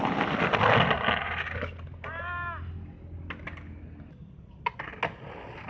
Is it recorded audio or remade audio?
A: recorded